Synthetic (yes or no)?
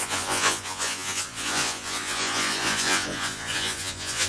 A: yes